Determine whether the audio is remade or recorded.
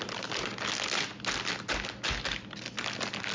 recorded